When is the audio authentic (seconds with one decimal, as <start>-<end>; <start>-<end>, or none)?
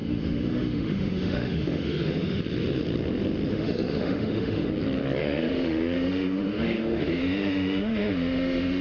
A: 2.4-3.5; 4.7-5.2